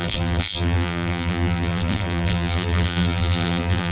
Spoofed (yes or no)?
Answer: yes